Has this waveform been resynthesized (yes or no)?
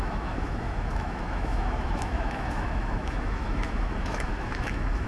yes